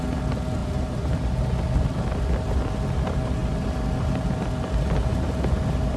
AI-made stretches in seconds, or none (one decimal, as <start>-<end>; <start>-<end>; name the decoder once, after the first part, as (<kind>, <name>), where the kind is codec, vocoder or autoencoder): 0.6-1.3 (vocoder, BigVGAN v2)